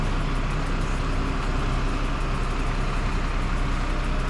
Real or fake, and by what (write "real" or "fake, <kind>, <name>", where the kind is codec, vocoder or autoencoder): real